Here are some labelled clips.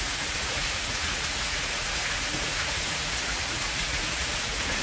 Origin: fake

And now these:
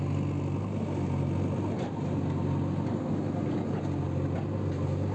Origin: real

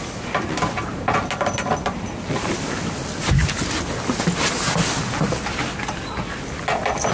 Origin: real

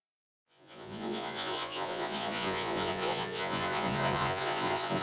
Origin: fake